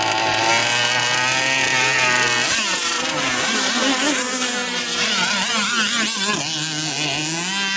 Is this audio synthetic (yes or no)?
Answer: no